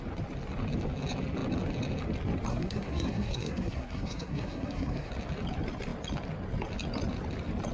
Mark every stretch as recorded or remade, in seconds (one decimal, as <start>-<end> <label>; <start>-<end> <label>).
0.0-2.5 recorded; 2.5-5.1 remade; 5.1-7.7 recorded